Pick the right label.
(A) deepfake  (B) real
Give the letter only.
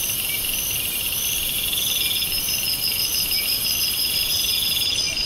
B